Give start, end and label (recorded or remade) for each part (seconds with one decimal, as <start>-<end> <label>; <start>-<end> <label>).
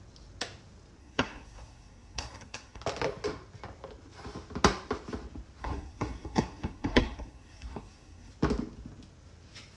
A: 0.0-1.0 recorded; 1.0-2.8 remade; 2.8-5.6 recorded; 5.6-8.3 remade; 8.3-9.8 recorded